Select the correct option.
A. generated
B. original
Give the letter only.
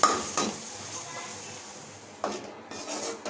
B